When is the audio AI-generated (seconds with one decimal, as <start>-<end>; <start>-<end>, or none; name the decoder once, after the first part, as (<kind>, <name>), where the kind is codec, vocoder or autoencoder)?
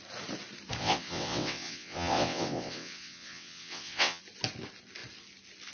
0.8-4.2 (vocoder, WaveNeXt)